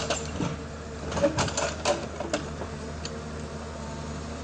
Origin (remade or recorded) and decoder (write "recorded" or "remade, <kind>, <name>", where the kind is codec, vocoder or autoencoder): recorded